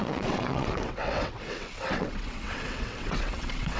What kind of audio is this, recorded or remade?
remade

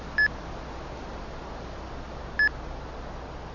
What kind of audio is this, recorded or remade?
recorded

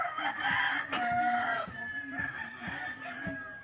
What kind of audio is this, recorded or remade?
remade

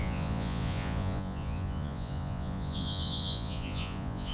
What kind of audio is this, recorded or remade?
remade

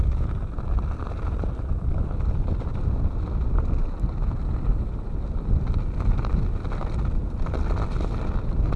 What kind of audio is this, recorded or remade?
recorded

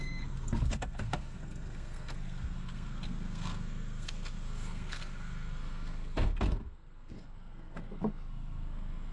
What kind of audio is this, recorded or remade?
remade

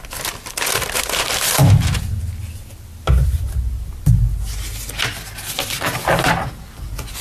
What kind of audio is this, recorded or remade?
recorded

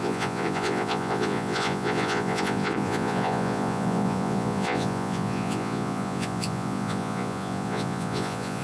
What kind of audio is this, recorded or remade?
remade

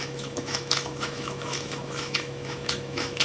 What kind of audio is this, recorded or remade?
remade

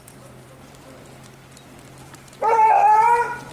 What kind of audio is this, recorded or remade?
remade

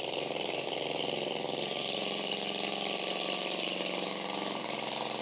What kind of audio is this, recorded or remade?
recorded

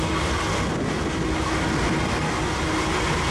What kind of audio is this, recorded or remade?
recorded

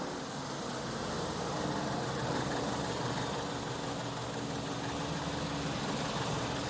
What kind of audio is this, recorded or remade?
recorded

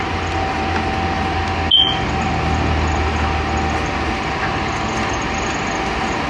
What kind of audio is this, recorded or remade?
recorded